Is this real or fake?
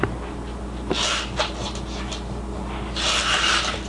real